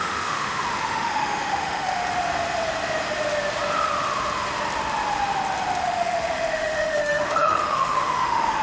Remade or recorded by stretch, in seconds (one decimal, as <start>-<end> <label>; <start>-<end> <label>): 0.0-2.0 remade; 2.0-5.8 recorded; 5.8-8.6 remade